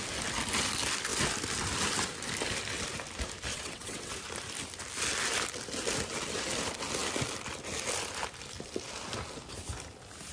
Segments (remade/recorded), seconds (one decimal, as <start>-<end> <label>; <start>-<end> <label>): 0.0-3.5 recorded; 3.5-4.2 remade; 4.2-10.3 recorded